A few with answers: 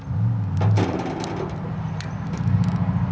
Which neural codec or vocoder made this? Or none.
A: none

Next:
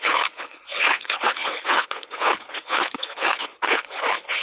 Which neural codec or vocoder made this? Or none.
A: codec, HILCodec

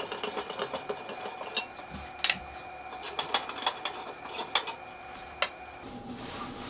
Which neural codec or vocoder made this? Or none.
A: none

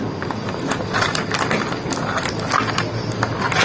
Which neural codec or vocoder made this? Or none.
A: none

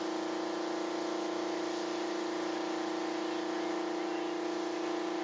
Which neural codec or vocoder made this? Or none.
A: none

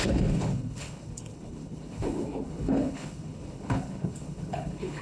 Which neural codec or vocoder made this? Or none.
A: codec, HILCodec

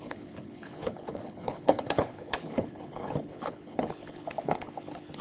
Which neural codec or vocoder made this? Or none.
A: codec, HILCodec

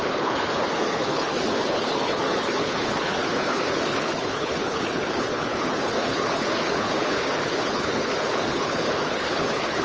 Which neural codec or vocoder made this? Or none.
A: codec, HILCodec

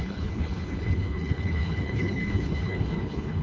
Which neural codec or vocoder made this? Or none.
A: codec, HILCodec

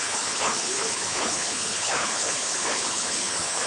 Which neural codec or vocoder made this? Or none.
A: codec, HILCodec